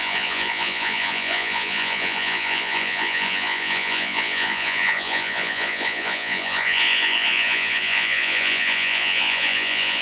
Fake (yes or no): yes